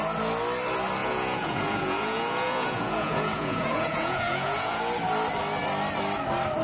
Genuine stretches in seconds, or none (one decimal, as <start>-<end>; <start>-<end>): 0.0-1.0; 4.8-6.6